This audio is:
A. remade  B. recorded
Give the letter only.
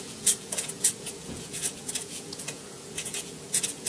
A